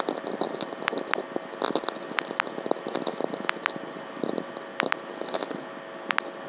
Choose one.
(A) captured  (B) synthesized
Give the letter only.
A